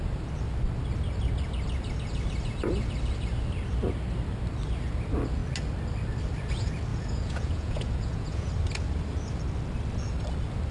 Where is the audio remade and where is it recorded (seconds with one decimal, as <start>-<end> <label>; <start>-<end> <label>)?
0.0-6.9 recorded; 6.9-8.5 remade; 8.5-10.7 recorded

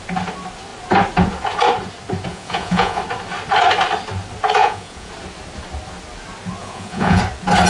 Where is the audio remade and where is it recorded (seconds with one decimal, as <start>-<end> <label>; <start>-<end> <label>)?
0.0-2.3 recorded; 2.3-3.0 remade; 3.0-4.6 recorded; 4.6-5.1 remade; 5.1-6.6 recorded; 6.6-7.2 remade; 7.2-7.7 recorded

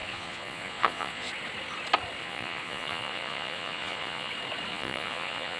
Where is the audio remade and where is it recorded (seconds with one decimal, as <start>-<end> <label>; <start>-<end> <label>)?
0.0-1.3 remade; 1.3-2.2 recorded; 2.2-4.3 remade; 4.3-4.7 recorded; 4.7-5.6 remade

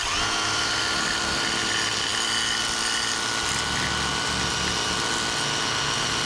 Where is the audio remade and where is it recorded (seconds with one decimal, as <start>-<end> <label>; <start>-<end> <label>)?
0.0-6.3 recorded

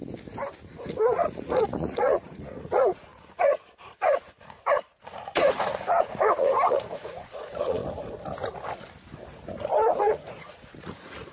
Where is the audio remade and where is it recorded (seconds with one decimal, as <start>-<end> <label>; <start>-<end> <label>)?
0.0-0.9 recorded; 0.9-7.8 remade; 7.8-10.0 recorded; 10.0-11.3 remade